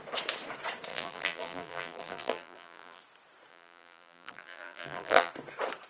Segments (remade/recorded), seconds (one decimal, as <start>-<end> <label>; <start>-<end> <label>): 0.0-0.9 recorded; 0.9-3.0 remade; 3.0-3.5 recorded; 3.5-5.3 remade; 5.3-5.9 recorded